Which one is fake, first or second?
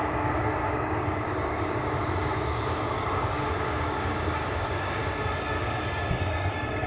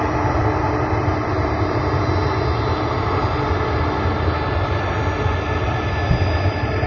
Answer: first